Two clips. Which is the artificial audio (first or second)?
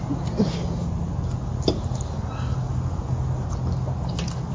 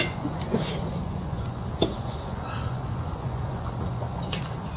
second